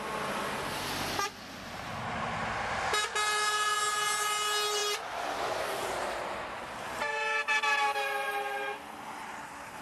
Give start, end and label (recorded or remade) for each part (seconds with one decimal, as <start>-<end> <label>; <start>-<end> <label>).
0.0-9.8 recorded